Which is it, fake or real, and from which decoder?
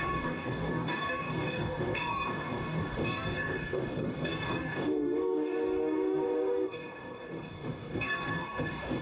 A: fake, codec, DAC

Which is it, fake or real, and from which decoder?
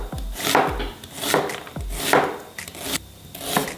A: real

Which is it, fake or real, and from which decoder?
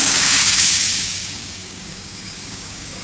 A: fake, codec, DAC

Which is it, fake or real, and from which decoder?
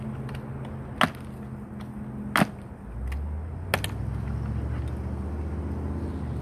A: real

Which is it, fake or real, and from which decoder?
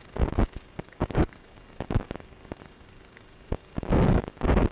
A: fake, codec, DAC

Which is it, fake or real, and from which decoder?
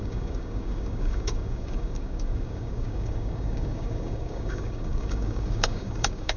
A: fake, codec, DAC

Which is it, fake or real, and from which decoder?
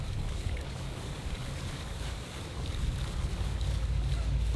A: fake, codec, DAC